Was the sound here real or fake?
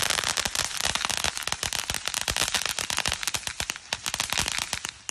real